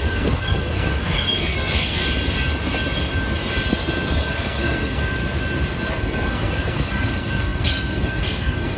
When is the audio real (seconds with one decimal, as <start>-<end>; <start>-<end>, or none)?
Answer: 2.0-4.2; 5.2-5.9